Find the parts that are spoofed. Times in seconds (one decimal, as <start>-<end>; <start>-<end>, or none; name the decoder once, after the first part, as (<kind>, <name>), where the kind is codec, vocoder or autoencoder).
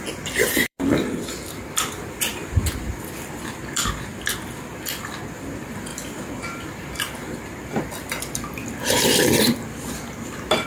0.0-2.3 (vocoder, BigVGAN v2); 2.8-4.1; 5.0-5.9; 6.6-10.7